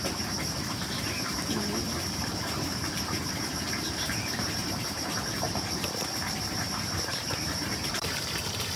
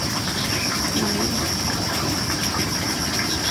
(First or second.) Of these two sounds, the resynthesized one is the first